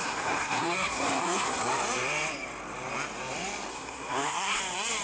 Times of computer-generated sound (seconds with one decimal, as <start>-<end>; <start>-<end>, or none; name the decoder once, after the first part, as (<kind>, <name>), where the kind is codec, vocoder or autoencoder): 0.0-1.6 (codec, SNAC); 3.7-4.6